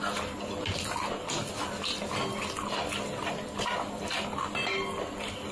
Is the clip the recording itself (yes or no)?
yes